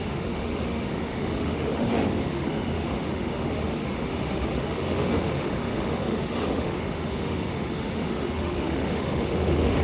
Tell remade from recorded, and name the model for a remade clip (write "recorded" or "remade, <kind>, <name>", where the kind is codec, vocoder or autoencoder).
remade, autoencoder, DAC-VAE